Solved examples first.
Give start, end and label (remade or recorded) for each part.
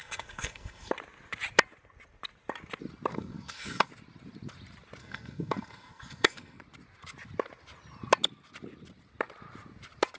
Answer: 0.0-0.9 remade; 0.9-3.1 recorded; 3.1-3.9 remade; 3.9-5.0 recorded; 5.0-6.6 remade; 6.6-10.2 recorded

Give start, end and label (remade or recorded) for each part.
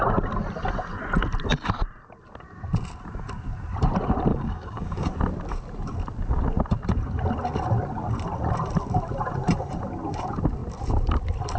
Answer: 0.0-4.3 recorded; 4.3-5.1 remade; 5.1-11.6 recorded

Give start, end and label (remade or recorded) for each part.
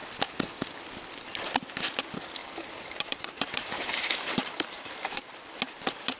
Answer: 0.0-2.4 recorded; 2.4-5.3 remade; 5.3-6.2 recorded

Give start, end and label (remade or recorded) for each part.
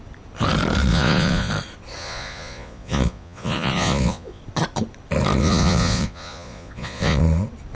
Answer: 0.0-0.9 recorded; 0.9-1.5 remade; 1.5-2.0 recorded; 2.0-4.4 remade; 4.4-5.4 recorded; 5.4-7.2 remade; 7.2-7.7 recorded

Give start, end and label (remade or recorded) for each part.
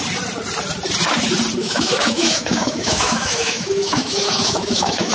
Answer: 0.0-1.6 recorded; 1.6-5.1 remade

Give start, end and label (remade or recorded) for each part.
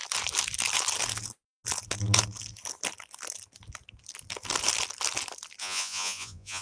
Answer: 0.0-5.6 recorded; 5.6-6.6 remade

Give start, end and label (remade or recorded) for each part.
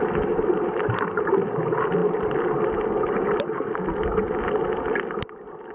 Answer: 0.0-5.7 recorded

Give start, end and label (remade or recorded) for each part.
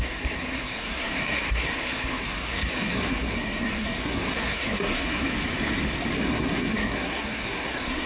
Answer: 0.0-5.3 remade; 5.3-6.1 recorded; 6.1-8.1 remade